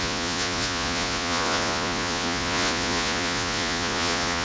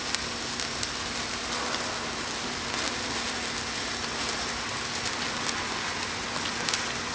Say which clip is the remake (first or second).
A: first